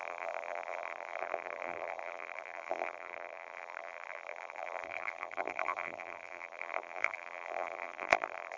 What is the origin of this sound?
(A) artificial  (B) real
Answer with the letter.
A